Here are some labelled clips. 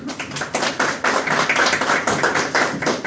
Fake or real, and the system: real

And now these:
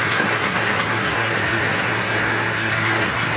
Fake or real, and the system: fake, codec, SNAC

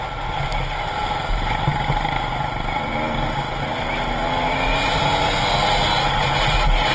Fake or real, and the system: real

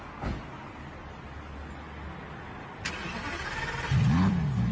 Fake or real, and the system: real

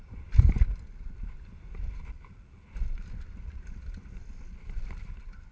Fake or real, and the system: real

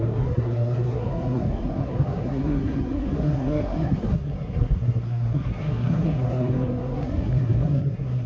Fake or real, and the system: fake, codec, SNAC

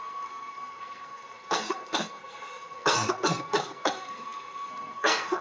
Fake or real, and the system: fake, codec, SNAC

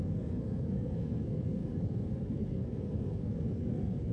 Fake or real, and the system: fake, codec, SNAC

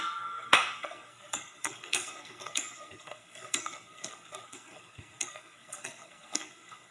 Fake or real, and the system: fake, codec, SNAC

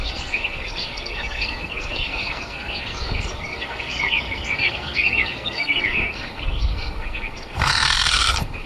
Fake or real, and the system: fake, codec, SNAC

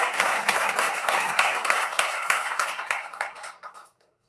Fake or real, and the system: fake, codec, SNAC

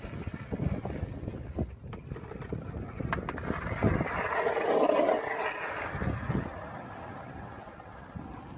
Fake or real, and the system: real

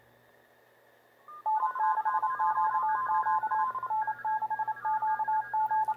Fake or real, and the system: real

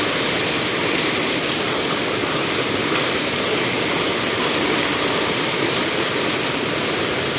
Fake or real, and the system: real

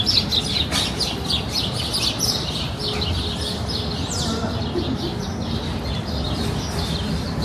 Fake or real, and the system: real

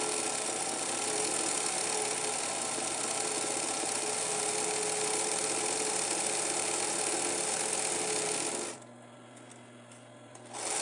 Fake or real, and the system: real